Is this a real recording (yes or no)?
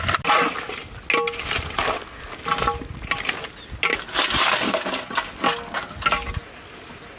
yes